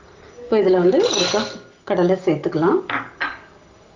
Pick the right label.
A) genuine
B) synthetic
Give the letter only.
B